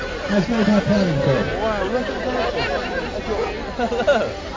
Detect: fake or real real